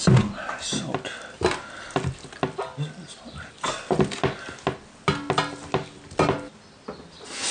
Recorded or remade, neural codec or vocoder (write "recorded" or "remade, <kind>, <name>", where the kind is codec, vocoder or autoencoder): recorded